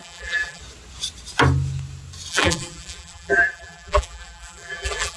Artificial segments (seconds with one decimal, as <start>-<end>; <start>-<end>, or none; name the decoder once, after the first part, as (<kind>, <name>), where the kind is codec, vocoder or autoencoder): 0.0-0.6 (vocoder, BigVGAN v2); 2.3-5.2